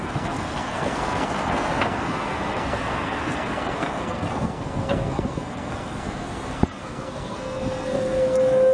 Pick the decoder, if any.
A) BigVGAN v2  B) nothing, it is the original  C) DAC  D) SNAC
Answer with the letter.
D